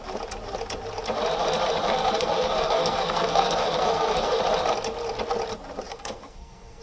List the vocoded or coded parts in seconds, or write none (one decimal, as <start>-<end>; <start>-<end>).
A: 1.9-4.4; 5.9-6.8